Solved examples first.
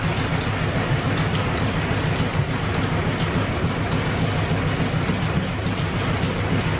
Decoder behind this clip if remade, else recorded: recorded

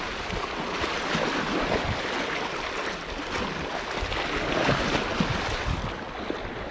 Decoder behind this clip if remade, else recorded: recorded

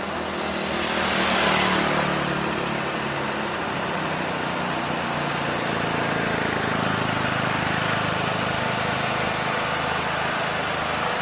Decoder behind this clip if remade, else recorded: recorded